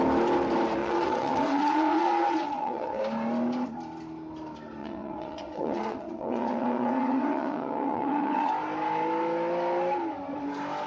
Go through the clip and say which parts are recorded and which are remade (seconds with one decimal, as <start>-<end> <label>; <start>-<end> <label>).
0.0-0.8 recorded; 0.8-3.0 remade; 3.0-4.8 recorded; 4.8-8.5 remade; 8.5-10.9 recorded